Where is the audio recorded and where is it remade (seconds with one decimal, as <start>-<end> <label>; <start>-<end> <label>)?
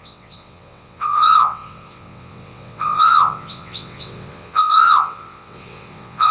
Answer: 0.0-6.3 remade